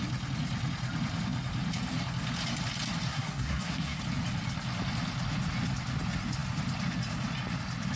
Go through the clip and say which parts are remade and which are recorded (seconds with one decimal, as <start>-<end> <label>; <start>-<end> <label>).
0.0-3.1 recorded; 3.1-4.0 remade; 4.0-8.0 recorded